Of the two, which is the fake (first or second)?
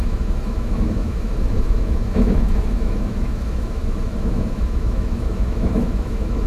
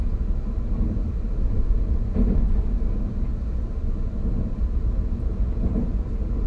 first